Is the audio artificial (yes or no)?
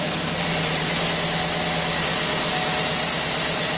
no